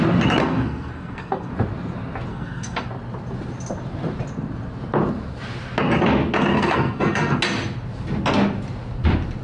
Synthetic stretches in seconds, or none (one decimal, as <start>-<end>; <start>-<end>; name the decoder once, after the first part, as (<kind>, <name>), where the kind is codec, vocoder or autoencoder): 0.4-1.5 (codec, SNAC); 2.3-2.9; 6.5-7.4